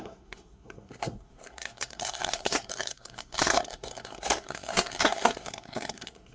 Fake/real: fake